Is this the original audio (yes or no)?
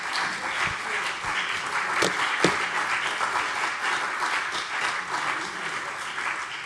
yes